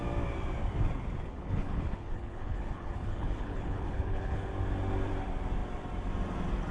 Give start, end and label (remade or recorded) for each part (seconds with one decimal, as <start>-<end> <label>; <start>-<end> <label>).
0.0-1.3 recorded; 1.3-4.5 remade; 4.5-6.7 recorded